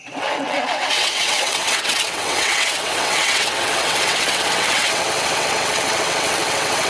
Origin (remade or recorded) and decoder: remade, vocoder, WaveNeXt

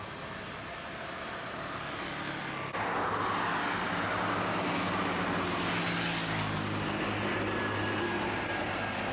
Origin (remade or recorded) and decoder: recorded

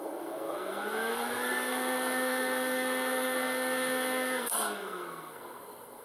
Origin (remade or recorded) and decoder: remade, codec, SNAC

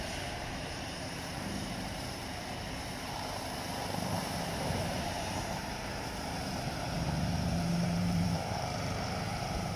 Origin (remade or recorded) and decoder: remade, vocoder, BigVGAN v2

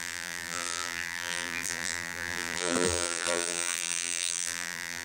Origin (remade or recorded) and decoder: remade, vocoder, BigVGAN v2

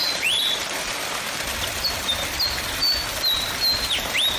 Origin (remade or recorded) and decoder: remade, vocoder, BigVGAN v2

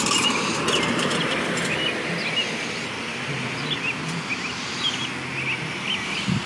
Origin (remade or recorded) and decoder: recorded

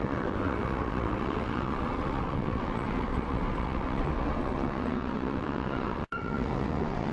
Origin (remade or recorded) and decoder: remade, vocoder, WaveNeXt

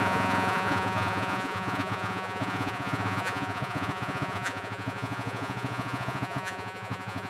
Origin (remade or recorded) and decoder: remade, vocoder, Vocos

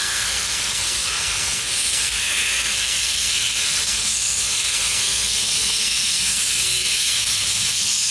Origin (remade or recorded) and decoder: remade, codec, SNAC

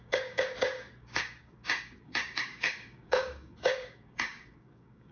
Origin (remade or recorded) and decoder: remade, codec, DAC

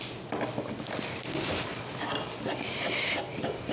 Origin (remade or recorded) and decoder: recorded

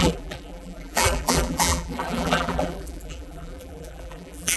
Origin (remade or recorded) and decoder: remade, vocoder, BigVGAN v2